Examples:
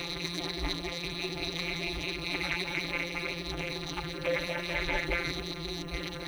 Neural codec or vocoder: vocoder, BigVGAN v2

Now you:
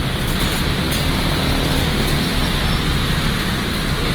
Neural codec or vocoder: none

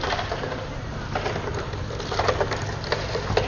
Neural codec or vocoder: vocoder, BigVGAN v2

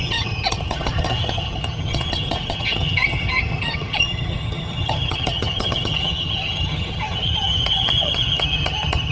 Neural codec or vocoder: vocoder, HiFi-GAN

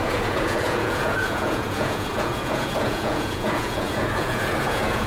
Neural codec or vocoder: vocoder, Vocos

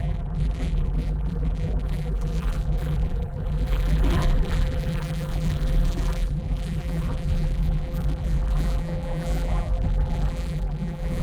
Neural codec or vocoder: vocoder, BigVGAN v2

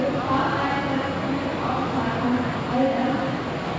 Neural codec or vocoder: none